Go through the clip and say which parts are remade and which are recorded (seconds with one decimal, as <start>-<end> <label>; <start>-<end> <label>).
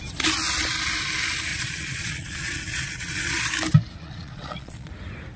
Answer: 0.0-1.5 recorded; 1.5-3.5 remade; 3.5-4.0 recorded; 4.0-4.9 remade; 4.9-5.4 recorded